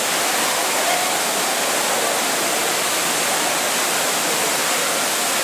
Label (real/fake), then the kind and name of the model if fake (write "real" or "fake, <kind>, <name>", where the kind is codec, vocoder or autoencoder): real